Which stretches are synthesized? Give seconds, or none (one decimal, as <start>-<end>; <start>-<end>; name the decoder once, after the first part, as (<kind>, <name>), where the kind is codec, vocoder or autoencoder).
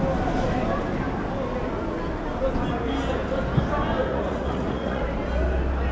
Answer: 4.1-5.0 (vocoder, Vocos)